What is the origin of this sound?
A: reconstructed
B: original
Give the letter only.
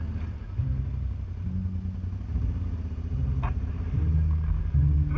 B